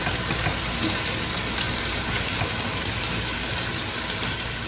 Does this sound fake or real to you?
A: real